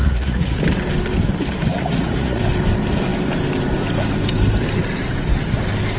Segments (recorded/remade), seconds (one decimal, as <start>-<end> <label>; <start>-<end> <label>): 0.0-0.6 remade; 0.6-1.7 recorded; 1.7-2.4 remade; 2.4-6.0 recorded